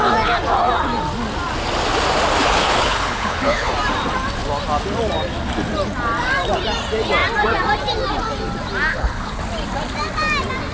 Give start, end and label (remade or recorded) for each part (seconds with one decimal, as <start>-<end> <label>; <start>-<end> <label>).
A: 0.0-2.4 recorded; 2.4-3.7 remade; 3.7-8.9 recorded; 8.9-9.4 remade; 9.4-10.7 recorded

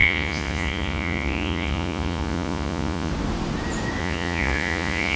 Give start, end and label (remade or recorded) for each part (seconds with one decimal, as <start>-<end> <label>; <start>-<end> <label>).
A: 0.0-3.1 remade; 3.1-4.0 recorded; 4.0-5.2 remade

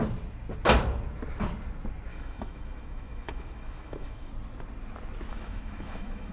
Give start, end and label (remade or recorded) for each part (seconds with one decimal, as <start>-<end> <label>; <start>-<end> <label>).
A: 0.0-2.1 recorded; 2.1-4.3 remade; 4.3-5.3 recorded; 5.3-6.3 remade

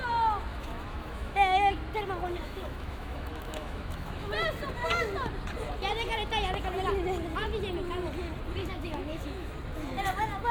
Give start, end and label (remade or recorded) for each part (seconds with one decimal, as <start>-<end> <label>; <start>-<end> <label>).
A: 0.0-0.5 recorded; 0.5-1.7 remade; 1.7-2.3 recorded; 2.3-4.3 remade; 4.3-8.6 recorded; 8.6-9.5 remade; 9.5-10.5 recorded